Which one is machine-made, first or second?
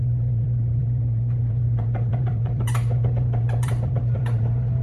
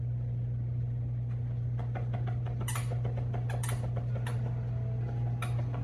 first